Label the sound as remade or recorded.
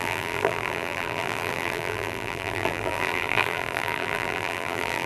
remade